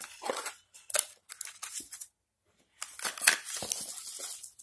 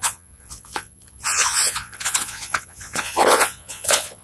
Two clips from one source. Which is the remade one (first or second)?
second